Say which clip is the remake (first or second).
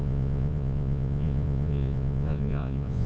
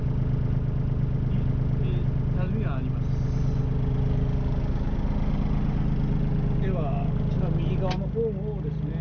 first